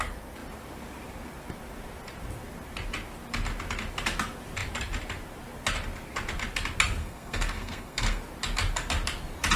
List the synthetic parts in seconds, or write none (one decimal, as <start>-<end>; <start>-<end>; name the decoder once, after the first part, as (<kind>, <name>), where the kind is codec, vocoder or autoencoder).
7.0-8.2 (codec, SNAC)